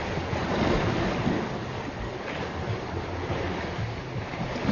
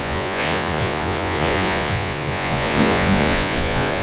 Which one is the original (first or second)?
first